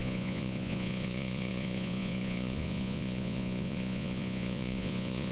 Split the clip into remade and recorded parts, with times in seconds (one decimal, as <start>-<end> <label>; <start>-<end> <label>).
0.0-5.3 remade